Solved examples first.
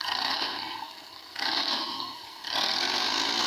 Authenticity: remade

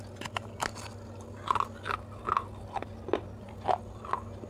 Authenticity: recorded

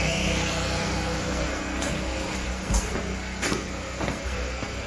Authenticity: remade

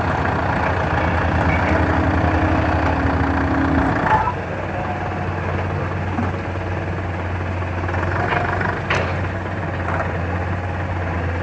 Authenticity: recorded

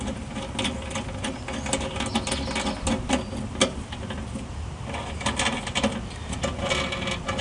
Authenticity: recorded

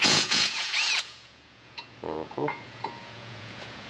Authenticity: remade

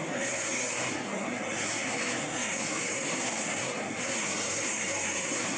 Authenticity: remade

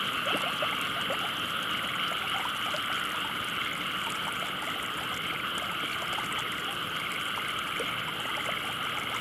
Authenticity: recorded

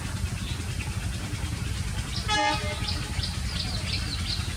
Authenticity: recorded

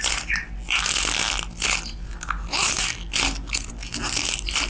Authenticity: recorded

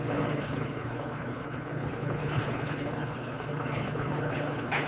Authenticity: remade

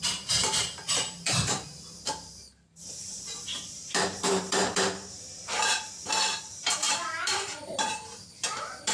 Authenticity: remade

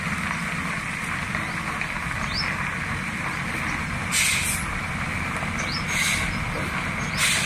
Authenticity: recorded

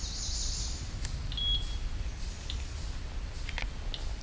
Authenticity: recorded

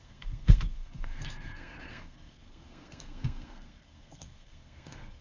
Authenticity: remade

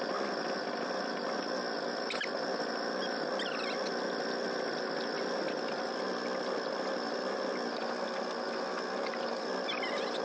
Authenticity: recorded